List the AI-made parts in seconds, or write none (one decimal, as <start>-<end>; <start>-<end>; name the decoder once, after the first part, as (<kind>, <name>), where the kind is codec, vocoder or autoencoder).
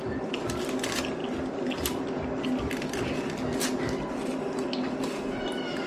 none